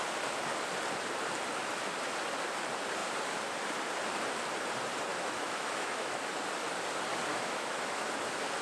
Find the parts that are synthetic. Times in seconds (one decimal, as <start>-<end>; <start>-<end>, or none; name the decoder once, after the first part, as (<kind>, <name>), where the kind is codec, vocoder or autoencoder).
5.1-6.3 (autoencoder, DAC-VAE); 7.3-8.0

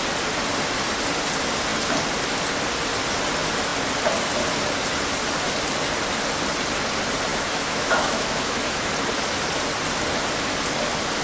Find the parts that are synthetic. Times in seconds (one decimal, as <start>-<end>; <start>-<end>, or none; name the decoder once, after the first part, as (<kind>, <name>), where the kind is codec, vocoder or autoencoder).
7.3-8.9 (autoencoder, DAC-VAE)

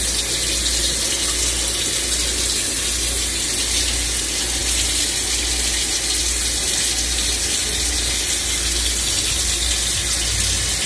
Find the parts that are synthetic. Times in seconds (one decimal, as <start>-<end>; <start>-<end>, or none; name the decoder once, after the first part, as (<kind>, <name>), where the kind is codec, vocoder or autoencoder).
none

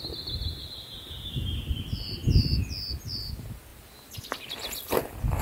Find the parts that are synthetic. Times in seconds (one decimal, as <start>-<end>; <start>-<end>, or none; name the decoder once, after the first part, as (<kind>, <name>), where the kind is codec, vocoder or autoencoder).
none

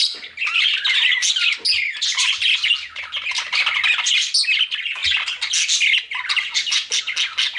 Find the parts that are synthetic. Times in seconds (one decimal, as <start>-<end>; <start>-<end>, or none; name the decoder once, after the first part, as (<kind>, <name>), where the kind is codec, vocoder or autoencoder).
none

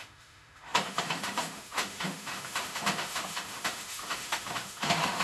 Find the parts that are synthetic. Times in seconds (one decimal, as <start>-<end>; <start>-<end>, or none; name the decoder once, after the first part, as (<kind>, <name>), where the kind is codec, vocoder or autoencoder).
0.0-5.2 (autoencoder, DAC-VAE)

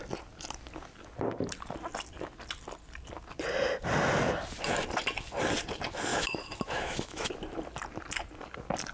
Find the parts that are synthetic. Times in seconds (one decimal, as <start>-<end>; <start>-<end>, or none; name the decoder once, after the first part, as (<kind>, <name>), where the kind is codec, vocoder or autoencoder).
6.1-7.3 (autoencoder, DAC-VAE)